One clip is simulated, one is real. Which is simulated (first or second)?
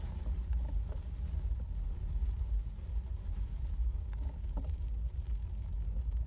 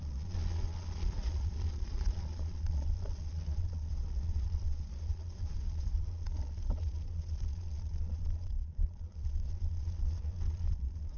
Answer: second